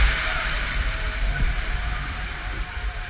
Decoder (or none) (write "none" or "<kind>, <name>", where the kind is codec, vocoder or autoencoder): vocoder, BigVGAN v2